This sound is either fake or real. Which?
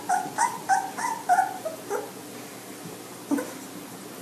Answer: real